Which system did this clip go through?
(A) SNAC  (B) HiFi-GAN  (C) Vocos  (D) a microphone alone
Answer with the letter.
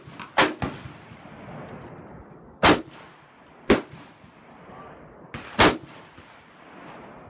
D